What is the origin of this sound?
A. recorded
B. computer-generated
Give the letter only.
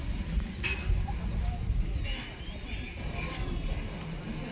A